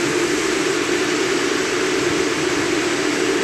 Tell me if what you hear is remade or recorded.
recorded